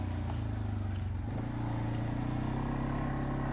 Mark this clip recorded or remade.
recorded